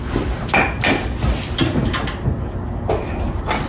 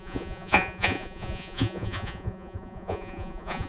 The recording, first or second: first